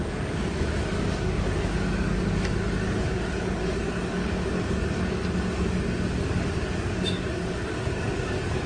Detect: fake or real fake